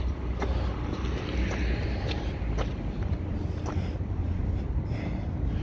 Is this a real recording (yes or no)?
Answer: yes